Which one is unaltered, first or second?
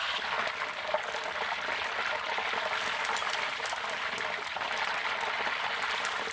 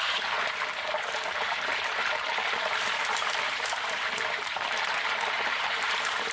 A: first